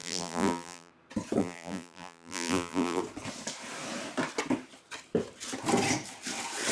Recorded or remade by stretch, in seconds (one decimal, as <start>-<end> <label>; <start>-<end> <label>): 0.0-0.9 remade; 0.9-1.4 recorded; 1.4-3.0 remade; 3.0-6.7 recorded